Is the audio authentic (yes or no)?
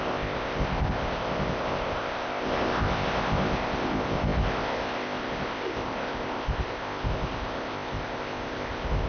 no